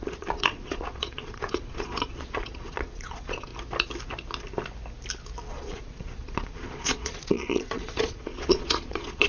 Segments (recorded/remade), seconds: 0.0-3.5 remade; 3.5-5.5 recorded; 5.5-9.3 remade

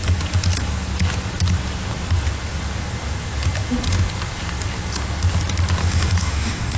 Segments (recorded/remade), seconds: 0.0-5.8 recorded; 5.8-6.8 remade

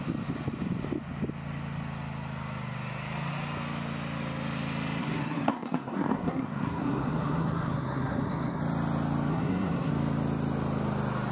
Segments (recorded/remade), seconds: 0.0-5.0 recorded; 5.0-8.6 remade; 8.6-9.3 recorded; 9.3-9.9 remade; 9.9-11.3 recorded

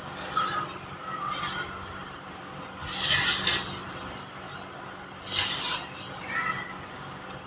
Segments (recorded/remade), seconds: 0.0-7.5 recorded

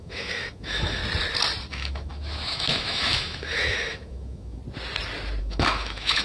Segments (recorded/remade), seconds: 0.0-1.0 remade; 1.0-1.7 recorded; 1.7-4.6 remade; 4.6-5.4 recorded; 5.4-6.2 remade